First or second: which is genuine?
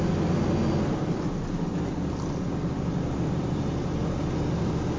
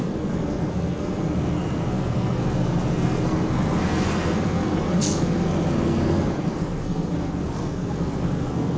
first